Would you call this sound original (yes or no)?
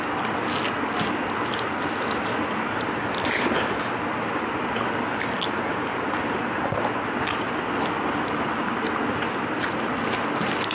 yes